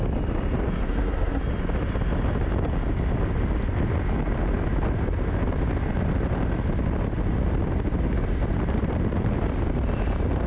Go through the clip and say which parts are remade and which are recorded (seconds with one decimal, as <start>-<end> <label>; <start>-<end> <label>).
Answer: 0.0-0.8 recorded; 0.8-1.4 remade; 1.4-10.5 recorded